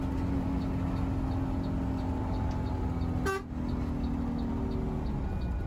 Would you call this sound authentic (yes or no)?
yes